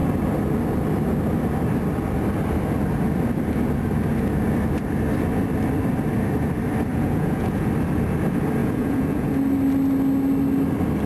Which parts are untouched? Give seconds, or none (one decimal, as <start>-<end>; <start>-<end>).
0.0-6.9; 7.7-8.6; 9.4-11.1